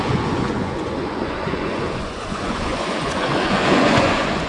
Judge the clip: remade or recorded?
remade